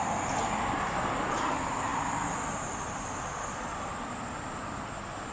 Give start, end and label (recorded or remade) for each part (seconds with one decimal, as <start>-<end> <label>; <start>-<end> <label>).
0.0-5.3 remade